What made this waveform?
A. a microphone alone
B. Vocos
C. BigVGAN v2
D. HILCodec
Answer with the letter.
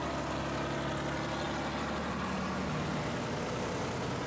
A